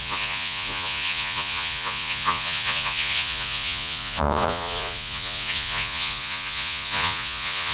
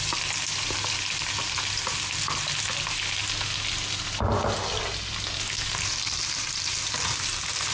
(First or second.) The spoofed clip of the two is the first